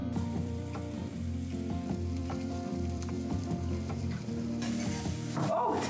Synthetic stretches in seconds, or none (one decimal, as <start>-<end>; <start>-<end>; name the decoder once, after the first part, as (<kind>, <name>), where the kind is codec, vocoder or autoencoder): 0.0-1.0 (vocoder, BigVGAN v2); 2.2-4.2